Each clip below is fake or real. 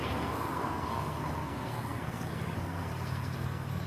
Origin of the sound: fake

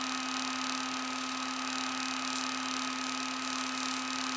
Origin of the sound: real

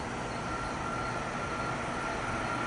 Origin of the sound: real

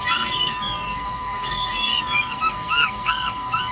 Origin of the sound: fake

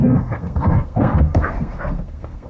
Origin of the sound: fake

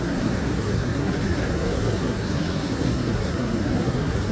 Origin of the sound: fake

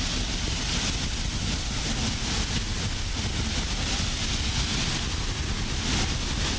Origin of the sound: real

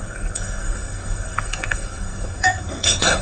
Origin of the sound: fake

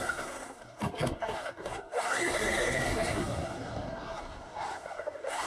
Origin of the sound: fake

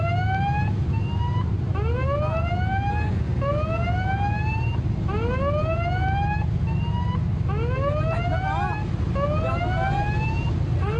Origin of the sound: real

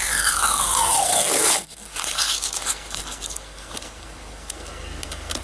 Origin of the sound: fake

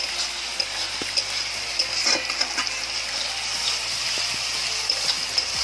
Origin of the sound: real